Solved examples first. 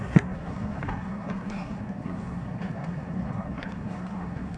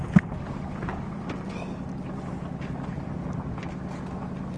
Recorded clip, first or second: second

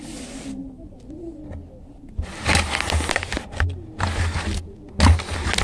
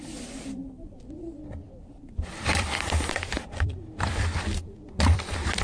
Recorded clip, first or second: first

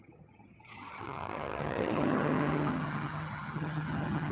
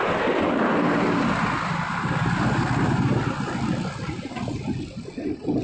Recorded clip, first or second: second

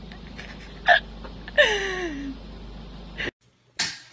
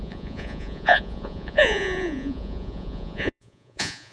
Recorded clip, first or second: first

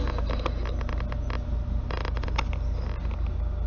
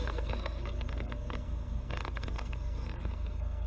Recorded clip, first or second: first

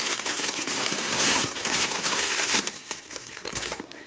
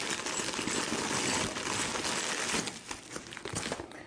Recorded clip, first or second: second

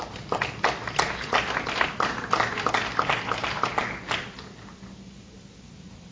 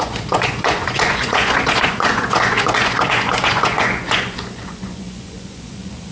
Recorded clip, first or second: first